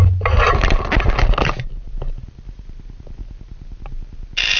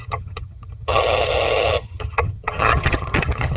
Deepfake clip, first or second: second